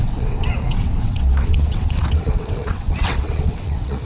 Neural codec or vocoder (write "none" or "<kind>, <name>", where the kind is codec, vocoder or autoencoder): vocoder, WaveNeXt